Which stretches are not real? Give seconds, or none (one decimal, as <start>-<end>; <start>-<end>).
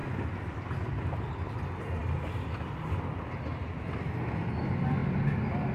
none